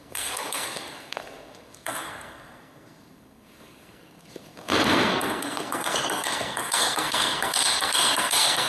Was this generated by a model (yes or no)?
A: yes